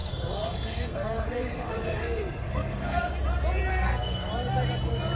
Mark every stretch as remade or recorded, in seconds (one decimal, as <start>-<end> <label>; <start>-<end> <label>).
0.0-3.1 remade; 3.1-3.7 recorded; 3.7-4.3 remade; 4.3-5.2 recorded